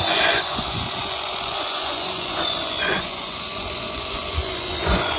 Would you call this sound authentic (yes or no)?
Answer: no